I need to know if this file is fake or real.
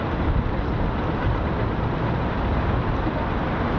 real